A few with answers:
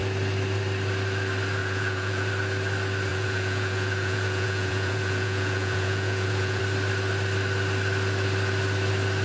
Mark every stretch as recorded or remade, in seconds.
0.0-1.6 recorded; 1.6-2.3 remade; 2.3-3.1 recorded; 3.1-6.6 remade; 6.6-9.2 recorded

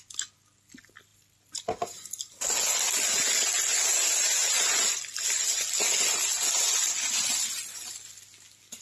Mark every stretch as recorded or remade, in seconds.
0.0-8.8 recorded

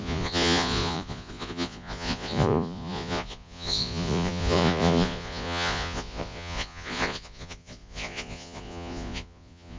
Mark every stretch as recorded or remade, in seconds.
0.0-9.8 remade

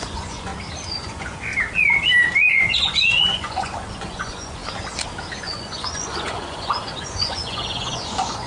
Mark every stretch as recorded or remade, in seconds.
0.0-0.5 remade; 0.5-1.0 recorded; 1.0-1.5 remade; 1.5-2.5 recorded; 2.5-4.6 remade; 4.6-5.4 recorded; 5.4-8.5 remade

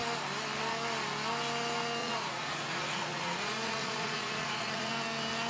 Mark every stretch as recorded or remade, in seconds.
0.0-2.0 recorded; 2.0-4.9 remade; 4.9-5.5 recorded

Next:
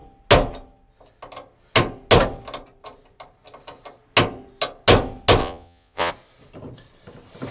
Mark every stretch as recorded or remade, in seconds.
0.0-5.4 recorded; 5.4-6.1 remade; 6.1-7.5 recorded

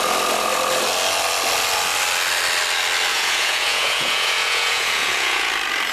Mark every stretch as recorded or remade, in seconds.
0.0-3.1 recorded; 3.1-5.5 remade; 5.5-5.9 recorded